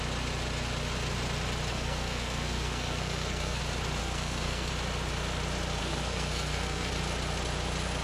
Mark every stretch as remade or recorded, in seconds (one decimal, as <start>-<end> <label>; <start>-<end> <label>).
0.0-1.7 recorded; 1.7-3.6 remade; 3.6-4.0 recorded; 4.0-4.7 remade; 4.7-5.8 recorded; 5.8-6.9 remade; 6.9-8.0 recorded

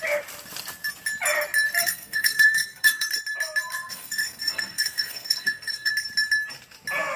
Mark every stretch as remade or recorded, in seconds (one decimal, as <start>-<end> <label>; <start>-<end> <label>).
0.0-1.8 recorded; 1.8-3.1 remade; 3.1-3.7 recorded; 3.7-5.9 remade; 5.9-7.2 recorded

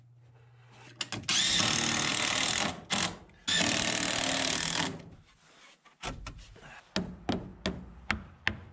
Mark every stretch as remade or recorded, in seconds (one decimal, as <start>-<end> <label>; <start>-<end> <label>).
0.0-8.7 recorded

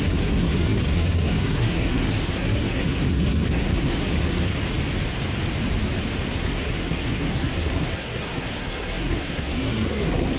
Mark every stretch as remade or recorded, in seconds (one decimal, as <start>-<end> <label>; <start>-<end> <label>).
0.0-4.5 remade; 4.5-6.3 recorded; 6.3-10.4 remade

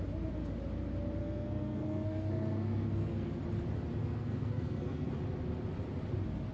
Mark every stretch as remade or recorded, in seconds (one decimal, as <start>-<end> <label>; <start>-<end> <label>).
0.0-1.2 recorded; 1.2-3.4 remade; 3.4-4.0 recorded; 4.0-5.1 remade; 5.1-6.5 recorded

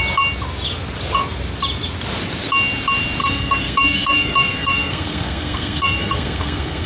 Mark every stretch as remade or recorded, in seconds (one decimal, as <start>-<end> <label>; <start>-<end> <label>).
0.0-3.2 recorded; 3.2-6.9 remade